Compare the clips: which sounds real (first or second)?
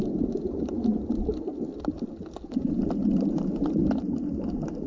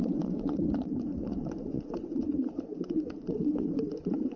first